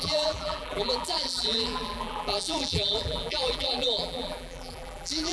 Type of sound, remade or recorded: remade